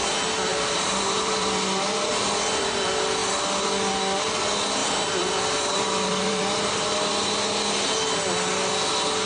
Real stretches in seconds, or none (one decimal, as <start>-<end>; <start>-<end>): 0.0-0.5; 2.1-4.8; 6.4-9.3